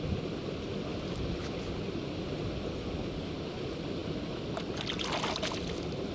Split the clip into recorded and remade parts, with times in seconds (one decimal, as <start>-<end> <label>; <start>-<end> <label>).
0.0-6.1 recorded